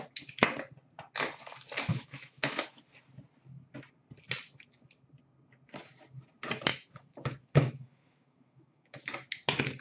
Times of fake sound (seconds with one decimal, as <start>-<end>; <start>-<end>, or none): 1.9-2.7; 6.7-9.3